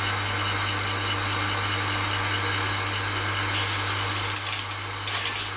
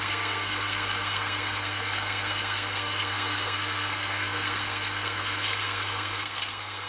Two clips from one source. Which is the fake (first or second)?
second